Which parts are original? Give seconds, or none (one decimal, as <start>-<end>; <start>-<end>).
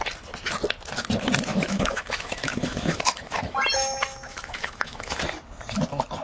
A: 0.0-1.5; 5.2-6.2